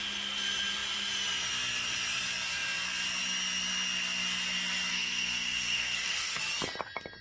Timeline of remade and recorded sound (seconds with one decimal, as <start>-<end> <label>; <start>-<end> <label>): 0.0-4.9 recorded; 4.9-6.4 remade; 6.4-7.2 recorded